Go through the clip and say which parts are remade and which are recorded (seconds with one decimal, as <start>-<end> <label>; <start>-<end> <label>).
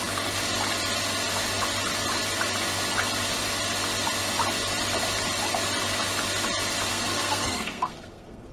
0.0-6.9 recorded; 6.9-8.5 remade